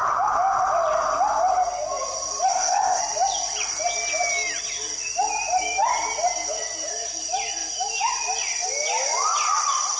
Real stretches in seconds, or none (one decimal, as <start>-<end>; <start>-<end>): 0.0-2.5; 3.0-10.0